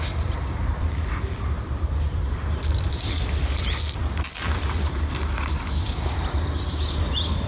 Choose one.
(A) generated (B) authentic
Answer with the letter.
A